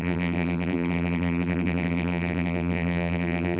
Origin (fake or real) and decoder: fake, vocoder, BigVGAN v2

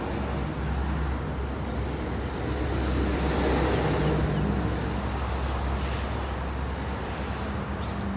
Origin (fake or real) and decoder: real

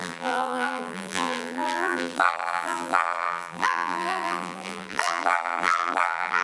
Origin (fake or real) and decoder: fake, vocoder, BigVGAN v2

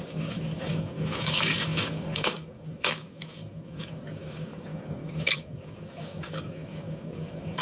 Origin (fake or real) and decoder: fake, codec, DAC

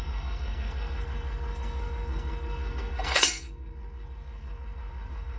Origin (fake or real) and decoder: fake, codec, SNAC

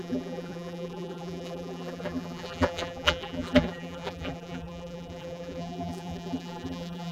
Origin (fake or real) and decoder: fake, vocoder, BigVGAN v2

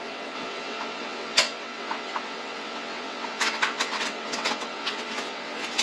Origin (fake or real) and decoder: fake, vocoder, WaveNeXt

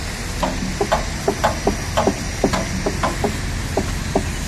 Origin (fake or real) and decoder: real